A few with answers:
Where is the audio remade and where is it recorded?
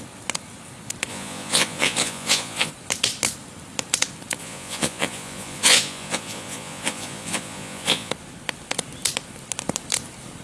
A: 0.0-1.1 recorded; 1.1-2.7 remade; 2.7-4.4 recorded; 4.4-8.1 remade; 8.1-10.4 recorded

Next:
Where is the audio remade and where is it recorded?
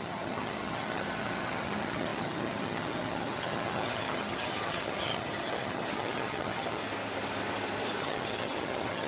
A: 0.0-6.8 remade; 6.8-8.0 recorded; 8.0-9.1 remade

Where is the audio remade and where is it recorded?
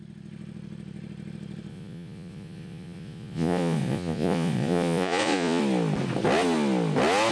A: 0.0-1.7 recorded; 1.7-5.6 remade; 5.6-7.3 recorded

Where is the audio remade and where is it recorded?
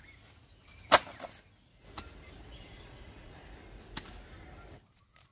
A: 0.0-2.5 recorded; 2.5-3.3 remade; 3.3-5.3 recorded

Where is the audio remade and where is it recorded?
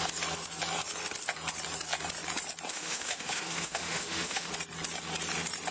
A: 0.0-2.7 recorded; 2.7-4.5 remade; 4.5-5.7 recorded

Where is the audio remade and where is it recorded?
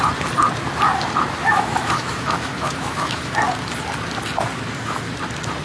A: 0.0-1.4 recorded; 1.4-3.3 remade; 3.3-5.6 recorded